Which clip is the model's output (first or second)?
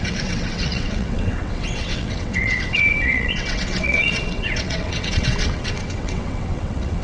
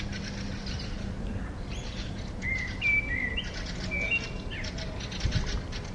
first